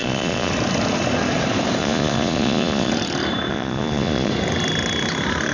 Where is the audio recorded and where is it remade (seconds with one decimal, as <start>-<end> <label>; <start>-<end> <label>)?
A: 0.0-0.5 remade; 0.5-1.8 recorded; 1.8-2.9 remade; 2.9-3.5 recorded; 3.5-4.3 remade; 4.3-5.5 recorded